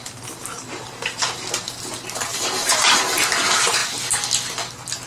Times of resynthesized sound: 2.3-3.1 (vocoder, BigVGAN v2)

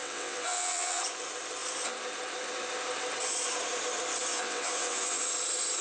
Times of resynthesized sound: 0.0-1.0 (vocoder, WaveNeXt); 4.3-5.3

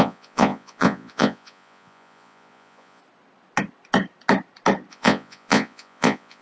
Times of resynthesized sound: 0.0-3.0 (vocoder, Vocos); 4.9-6.4

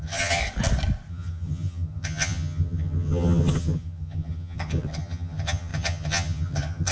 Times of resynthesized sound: 0.0-0.4 (vocoder, HiFi-GAN); 1.1-6.9

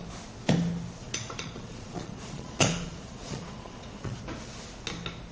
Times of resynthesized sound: 1.0-4.2 (vocoder, Vocos)